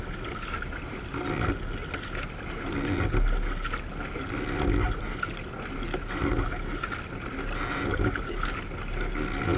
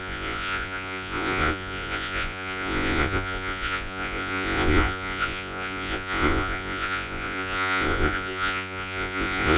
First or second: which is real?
first